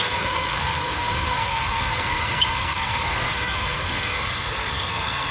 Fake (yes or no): yes